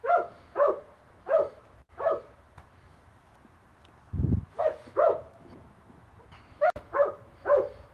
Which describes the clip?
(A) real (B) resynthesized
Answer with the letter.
B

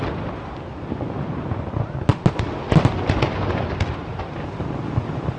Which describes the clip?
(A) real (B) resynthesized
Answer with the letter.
A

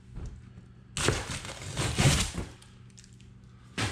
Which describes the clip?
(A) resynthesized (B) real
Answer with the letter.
B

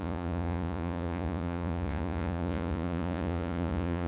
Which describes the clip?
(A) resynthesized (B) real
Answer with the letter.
A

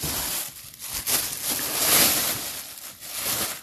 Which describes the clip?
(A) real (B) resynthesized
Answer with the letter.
A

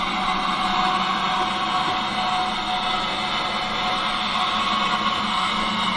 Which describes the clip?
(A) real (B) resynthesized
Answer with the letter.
A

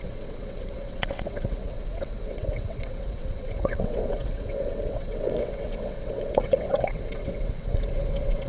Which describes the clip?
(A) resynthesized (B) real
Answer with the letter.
A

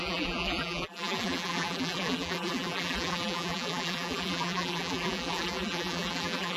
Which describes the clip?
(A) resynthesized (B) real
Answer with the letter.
A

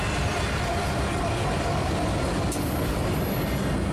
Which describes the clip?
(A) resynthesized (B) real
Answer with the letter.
B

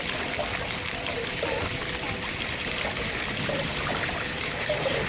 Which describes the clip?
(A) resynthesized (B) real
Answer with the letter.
B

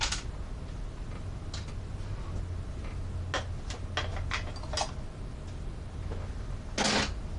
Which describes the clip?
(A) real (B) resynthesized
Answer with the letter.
A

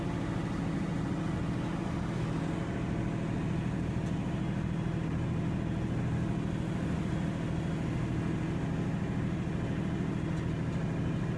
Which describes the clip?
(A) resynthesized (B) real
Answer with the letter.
B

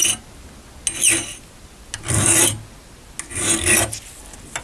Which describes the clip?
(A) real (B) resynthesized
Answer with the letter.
A